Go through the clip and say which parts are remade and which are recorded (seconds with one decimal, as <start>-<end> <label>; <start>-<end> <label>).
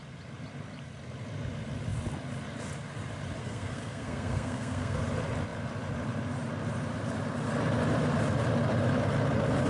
0.0-3.4 recorded; 3.4-5.0 remade; 5.0-9.7 recorded